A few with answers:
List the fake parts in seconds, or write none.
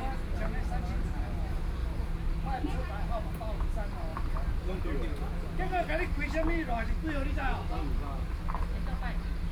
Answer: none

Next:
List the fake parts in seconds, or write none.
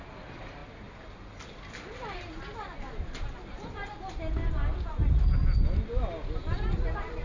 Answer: none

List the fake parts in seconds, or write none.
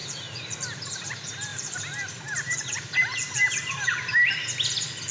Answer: 0.0-0.6 (vocoder, BigVGAN v2); 1.5-4.3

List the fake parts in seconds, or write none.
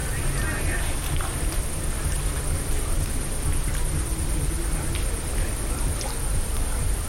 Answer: none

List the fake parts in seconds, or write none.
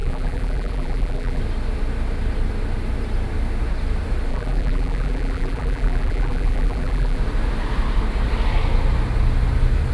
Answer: 0.0-1.4 (vocoder, BigVGAN v2); 4.3-7.2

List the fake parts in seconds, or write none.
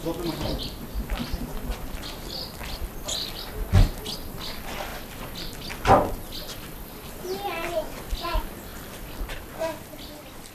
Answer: 1.5-3.5 (vocoder, BigVGAN v2); 8.7-9.4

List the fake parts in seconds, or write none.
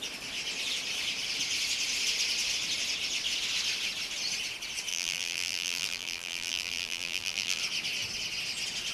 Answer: 4.9-7.6 (vocoder, BigVGAN v2)